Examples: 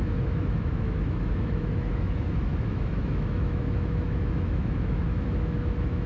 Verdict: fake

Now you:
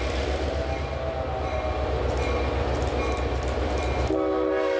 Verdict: real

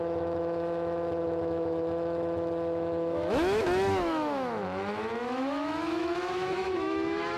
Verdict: fake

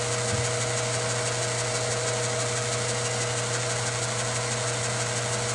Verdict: real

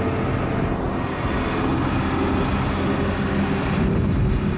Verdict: real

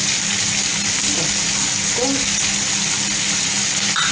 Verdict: real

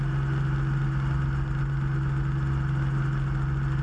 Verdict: real